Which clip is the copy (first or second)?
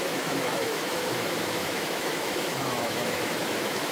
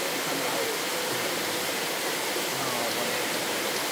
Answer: first